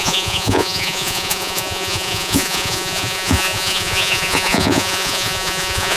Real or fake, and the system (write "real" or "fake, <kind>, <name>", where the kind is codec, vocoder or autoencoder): fake, vocoder, Vocos